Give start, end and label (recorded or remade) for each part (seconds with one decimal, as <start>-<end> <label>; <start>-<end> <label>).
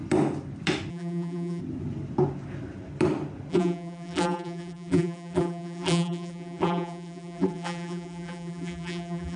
0.0-0.9 recorded; 0.9-1.6 remade; 1.6-3.5 recorded; 3.5-9.4 remade